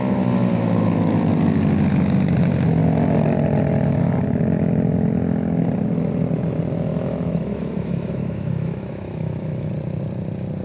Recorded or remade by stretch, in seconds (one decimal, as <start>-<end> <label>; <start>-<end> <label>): 0.0-6.9 recorded; 6.9-9.7 remade; 9.7-10.6 recorded